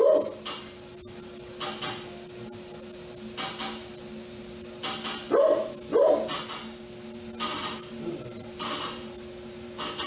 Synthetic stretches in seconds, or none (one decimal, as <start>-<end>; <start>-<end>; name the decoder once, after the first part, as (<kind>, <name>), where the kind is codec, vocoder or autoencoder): none

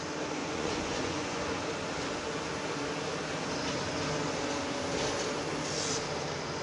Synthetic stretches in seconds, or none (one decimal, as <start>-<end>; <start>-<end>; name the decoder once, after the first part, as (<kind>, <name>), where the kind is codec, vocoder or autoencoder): 0.4-1.4 (vocoder, Vocos)

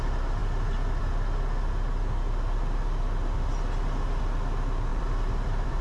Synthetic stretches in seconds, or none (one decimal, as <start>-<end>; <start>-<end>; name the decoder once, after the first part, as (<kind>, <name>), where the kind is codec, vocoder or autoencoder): 4.9-5.8 (vocoder, BigVGAN v2)

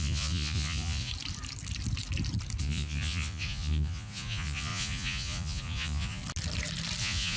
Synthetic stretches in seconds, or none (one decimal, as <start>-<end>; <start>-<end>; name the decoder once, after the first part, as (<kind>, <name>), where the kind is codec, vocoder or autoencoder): 0.0-1.1 (vocoder, Vocos); 2.6-6.2; 7.0-7.4

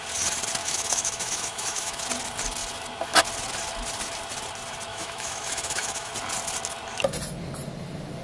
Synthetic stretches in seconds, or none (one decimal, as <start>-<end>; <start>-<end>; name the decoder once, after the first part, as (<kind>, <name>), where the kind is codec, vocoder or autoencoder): 0.6-2.0 (autoencoder, DAC-VAE); 4.9-6.1

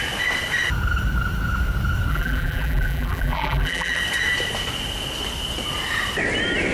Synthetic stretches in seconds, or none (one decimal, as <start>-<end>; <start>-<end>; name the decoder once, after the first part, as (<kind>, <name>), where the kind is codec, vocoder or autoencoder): 2.1-4.0 (vocoder, BigVGAN v2)